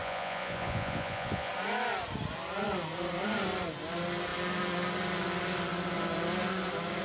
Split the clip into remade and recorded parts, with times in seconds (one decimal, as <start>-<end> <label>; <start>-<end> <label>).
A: 0.0-1.5 remade; 1.5-7.0 recorded

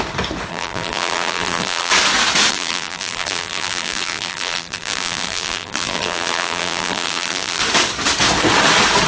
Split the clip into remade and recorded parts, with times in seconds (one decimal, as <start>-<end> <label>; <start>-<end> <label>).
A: 0.0-0.5 recorded; 0.5-1.9 remade; 1.9-2.5 recorded; 2.5-7.6 remade; 7.6-9.1 recorded